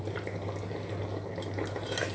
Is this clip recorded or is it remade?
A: recorded